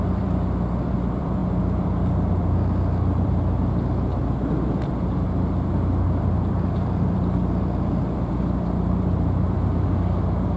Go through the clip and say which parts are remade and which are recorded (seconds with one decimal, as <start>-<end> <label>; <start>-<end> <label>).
0.0-1.4 remade; 1.4-2.4 recorded; 2.4-10.6 remade